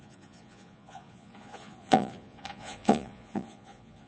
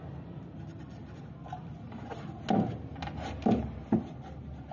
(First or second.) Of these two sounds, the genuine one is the second